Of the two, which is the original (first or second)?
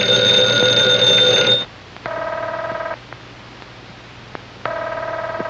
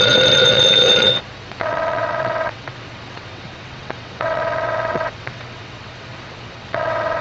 first